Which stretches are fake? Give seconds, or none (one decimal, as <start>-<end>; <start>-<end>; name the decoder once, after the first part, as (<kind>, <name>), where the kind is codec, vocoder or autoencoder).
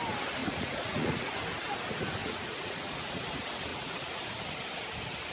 0.4-1.3 (vocoder, Vocos); 2.2-3.2; 3.7-4.2